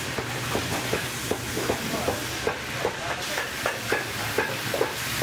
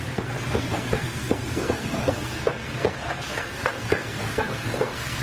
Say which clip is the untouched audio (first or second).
first